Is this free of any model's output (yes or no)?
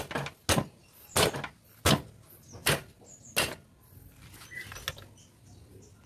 yes